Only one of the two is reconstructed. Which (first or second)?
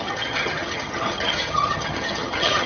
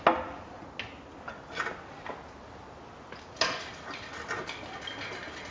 first